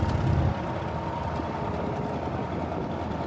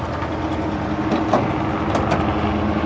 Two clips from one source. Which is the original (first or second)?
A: second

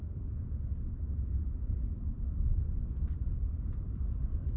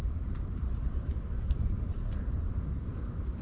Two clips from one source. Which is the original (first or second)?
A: first